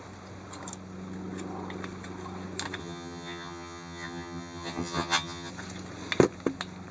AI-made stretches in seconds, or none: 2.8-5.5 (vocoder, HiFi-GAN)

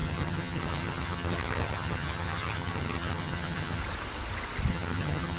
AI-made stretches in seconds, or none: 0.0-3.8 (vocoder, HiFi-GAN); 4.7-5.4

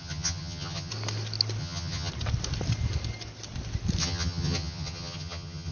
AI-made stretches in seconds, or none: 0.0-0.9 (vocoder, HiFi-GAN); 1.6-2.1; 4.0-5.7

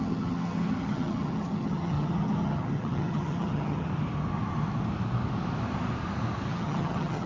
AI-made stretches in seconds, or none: 0.0-3.9 (vocoder, HiFi-GAN); 6.5-7.3

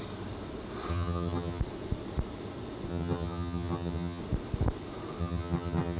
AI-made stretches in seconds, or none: 0.9-1.6 (vocoder, HiFi-GAN); 2.9-4.2; 5.2-6.0

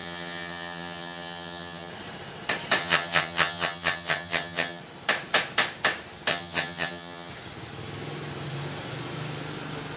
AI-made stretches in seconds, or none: 0.0-1.9 (vocoder, HiFi-GAN); 2.8-4.8; 6.3-7.3

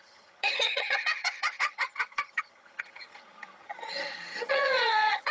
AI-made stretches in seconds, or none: 0.0-5.3 (vocoder, HiFi-GAN)

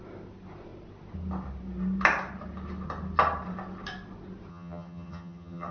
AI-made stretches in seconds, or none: 4.5-5.7 (vocoder, HiFi-GAN)